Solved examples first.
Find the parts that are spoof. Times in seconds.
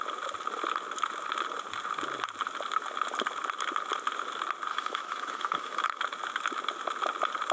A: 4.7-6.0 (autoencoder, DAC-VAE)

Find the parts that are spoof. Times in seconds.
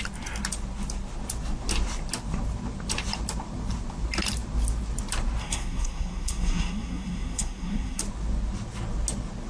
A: 5.4-8.0 (codec, SNAC)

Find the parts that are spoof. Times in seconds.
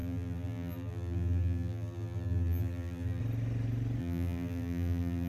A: 0.0-3.2 (vocoder, BigVGAN v2); 4.0-5.3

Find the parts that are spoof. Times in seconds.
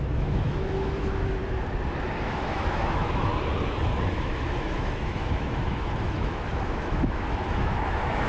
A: 0.0-1.4 (autoencoder, DAC-VAE); 2.2-3.3; 4.1-8.3